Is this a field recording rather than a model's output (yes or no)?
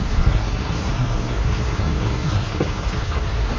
no